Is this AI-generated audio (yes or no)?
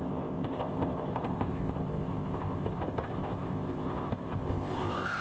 yes